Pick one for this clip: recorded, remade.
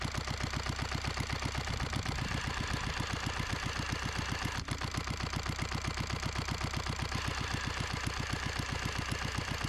recorded